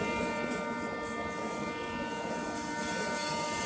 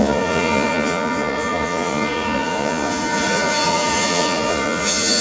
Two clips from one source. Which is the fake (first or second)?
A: second